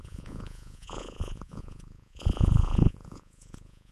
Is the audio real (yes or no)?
no